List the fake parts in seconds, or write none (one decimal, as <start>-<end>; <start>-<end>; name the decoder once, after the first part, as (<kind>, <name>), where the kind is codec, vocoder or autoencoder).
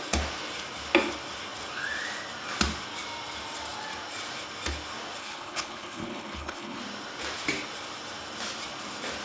5.2-6.8 (codec, HILCodec)